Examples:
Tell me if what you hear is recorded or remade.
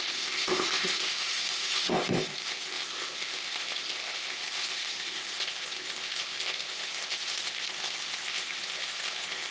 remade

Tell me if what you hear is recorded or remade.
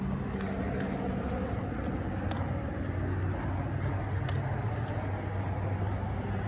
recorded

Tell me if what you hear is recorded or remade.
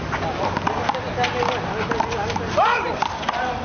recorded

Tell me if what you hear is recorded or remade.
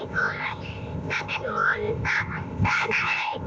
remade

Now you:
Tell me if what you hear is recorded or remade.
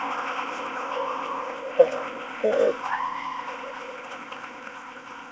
remade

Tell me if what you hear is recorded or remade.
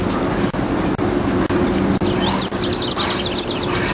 recorded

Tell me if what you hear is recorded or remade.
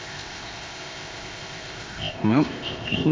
remade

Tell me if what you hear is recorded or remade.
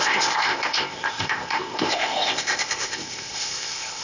remade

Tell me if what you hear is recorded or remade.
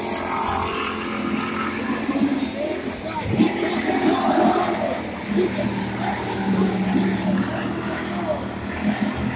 recorded